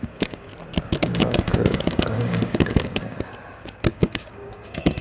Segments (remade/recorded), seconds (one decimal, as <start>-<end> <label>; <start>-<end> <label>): 0.0-0.5 remade; 0.5-1.0 recorded; 1.0-3.3 remade; 3.3-3.9 recorded; 3.9-5.0 remade